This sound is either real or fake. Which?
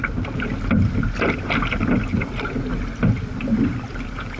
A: real